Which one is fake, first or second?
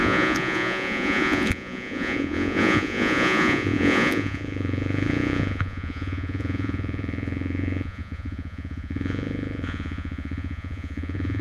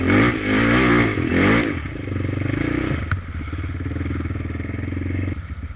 first